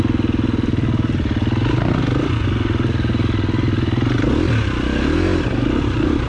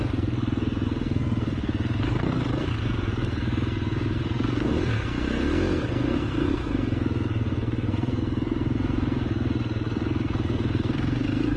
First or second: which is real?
first